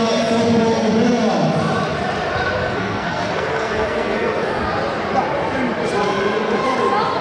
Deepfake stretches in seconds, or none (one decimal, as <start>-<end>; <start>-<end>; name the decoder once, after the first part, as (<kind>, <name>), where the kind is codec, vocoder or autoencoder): 2.6-4.6 (codec, SNAC)